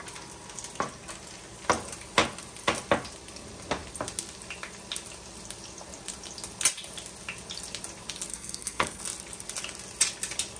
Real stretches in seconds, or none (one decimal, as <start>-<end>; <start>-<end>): 0.0-8.3; 9.0-10.6